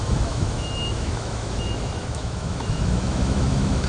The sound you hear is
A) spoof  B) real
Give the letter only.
A